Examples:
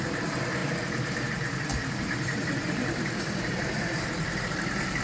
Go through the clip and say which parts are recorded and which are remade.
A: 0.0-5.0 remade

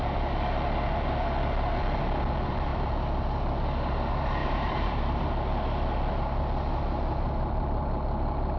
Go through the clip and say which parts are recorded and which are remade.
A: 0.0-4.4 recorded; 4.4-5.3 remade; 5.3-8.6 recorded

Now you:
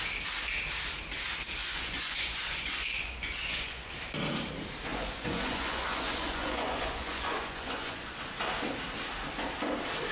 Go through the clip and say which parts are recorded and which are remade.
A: 0.0-1.6 recorded; 1.6-3.9 remade; 3.9-4.9 recorded; 4.9-8.1 remade; 8.1-10.1 recorded